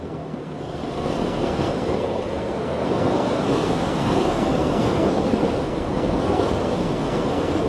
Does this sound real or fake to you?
fake